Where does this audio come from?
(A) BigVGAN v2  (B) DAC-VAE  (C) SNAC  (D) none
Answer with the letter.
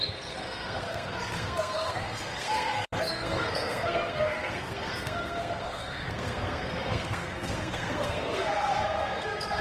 C